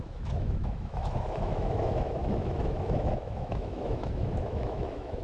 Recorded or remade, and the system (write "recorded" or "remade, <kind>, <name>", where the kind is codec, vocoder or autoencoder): remade, autoencoder, DAC-VAE